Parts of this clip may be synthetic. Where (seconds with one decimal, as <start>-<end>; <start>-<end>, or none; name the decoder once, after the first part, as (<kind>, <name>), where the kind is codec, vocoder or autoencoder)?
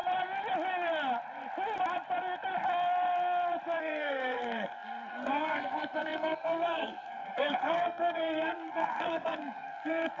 3.8-10.2 (codec, SNAC)